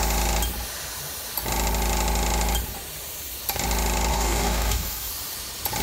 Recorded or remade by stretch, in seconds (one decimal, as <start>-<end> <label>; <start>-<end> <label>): 0.0-4.1 recorded; 4.1-5.1 remade; 5.1-5.8 recorded